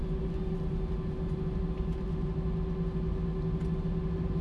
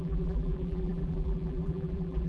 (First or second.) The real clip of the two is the first